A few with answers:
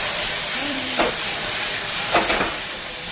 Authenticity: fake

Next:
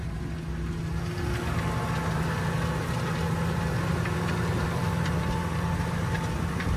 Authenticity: real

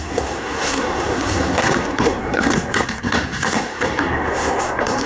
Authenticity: fake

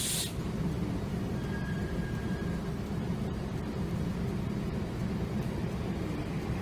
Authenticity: real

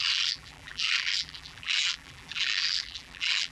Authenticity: fake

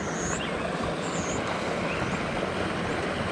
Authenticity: real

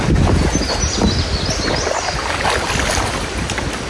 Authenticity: real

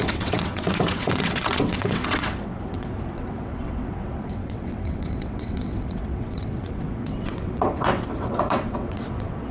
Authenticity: fake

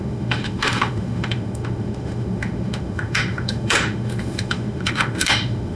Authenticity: fake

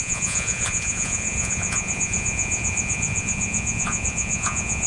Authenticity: fake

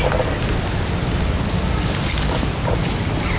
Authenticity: real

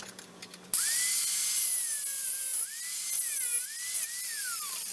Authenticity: real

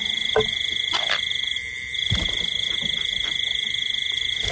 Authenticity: real